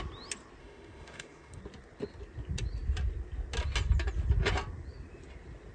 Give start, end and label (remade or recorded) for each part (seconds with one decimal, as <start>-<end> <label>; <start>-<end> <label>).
0.0-0.6 recorded; 0.6-1.6 remade; 1.6-5.7 recorded